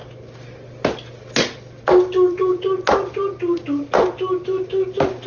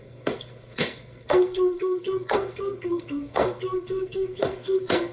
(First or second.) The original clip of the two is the first